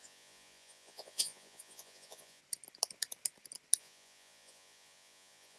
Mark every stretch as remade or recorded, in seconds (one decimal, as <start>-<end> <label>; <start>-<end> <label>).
0.0-2.4 remade; 2.4-3.8 recorded; 3.8-5.6 remade